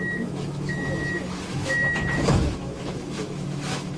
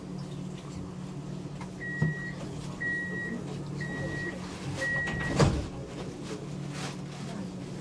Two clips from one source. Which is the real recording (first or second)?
second